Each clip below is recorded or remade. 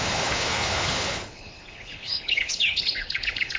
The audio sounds remade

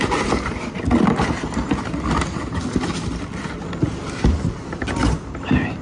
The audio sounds recorded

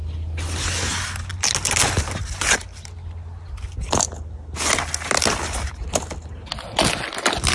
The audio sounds recorded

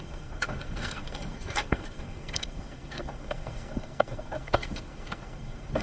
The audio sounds remade